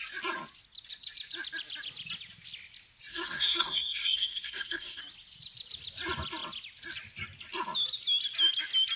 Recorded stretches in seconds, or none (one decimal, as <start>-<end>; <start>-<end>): 0.0-3.1; 5.0-9.0